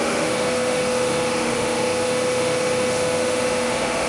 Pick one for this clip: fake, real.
fake